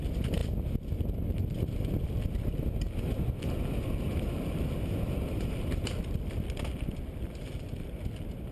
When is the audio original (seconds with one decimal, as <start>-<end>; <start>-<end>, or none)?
0.0-8.5